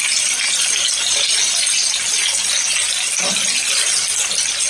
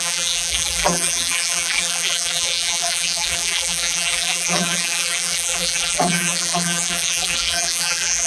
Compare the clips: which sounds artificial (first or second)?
second